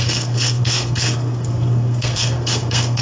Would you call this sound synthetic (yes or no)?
yes